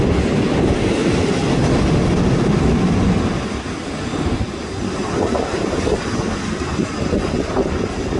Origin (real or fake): real